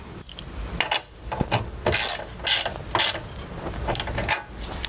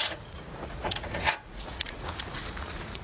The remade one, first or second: second